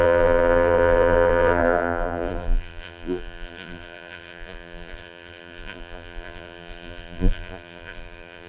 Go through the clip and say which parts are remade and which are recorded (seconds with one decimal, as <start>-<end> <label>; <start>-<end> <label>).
0.0-8.5 remade